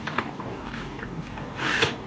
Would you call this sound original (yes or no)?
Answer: no